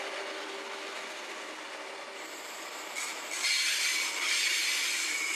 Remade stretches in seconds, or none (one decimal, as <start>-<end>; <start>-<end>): none